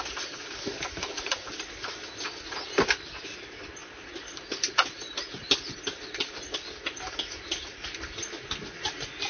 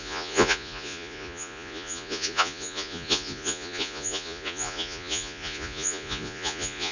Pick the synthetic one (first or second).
second